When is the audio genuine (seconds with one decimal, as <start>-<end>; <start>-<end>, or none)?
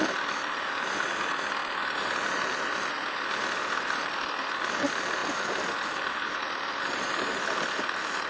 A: 0.0-8.3